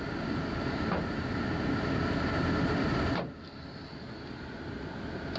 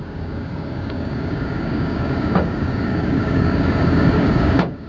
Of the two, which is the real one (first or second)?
first